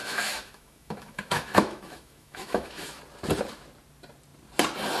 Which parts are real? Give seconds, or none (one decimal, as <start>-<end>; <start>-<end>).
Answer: 3.0-5.0